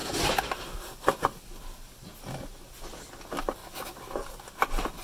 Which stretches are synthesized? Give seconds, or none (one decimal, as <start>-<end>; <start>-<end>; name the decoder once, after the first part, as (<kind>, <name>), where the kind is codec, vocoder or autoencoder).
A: none

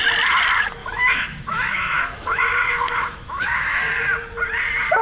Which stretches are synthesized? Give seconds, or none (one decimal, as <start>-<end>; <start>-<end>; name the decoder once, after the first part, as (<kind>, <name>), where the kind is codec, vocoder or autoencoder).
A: 0.8-3.8 (autoencoder, DAC-VAE)

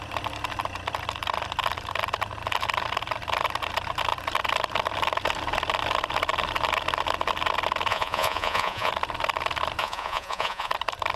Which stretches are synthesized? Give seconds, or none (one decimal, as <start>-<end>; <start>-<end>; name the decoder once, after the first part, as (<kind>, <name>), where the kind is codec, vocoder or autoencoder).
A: 7.9-8.9 (vocoder, Vocos); 9.8-10.7

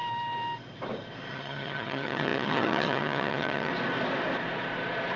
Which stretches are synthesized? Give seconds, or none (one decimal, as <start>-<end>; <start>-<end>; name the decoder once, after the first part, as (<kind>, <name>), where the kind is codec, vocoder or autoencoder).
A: 1.3-3.7 (vocoder, HiFi-GAN)

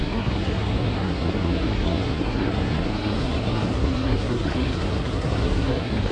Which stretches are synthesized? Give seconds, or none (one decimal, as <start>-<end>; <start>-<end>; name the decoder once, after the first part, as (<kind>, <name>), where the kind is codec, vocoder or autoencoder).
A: 0.0-6.1 (codec, SNAC)

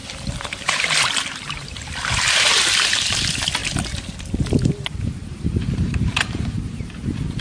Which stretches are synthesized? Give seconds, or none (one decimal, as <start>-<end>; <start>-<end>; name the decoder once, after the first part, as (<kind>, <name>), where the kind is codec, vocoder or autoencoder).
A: 0.0-2.1 (vocoder, BigVGAN v2); 5.2-7.0

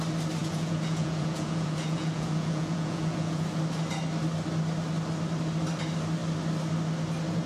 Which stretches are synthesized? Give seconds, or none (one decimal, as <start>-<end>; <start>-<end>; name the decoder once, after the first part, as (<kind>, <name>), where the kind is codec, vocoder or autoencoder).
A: 0.4-3.6 (vocoder, Vocos)